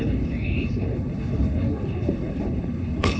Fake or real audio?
fake